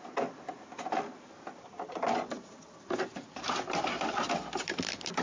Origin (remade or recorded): recorded